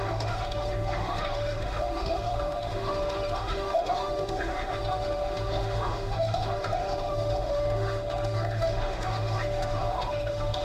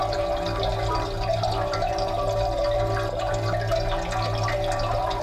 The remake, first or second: first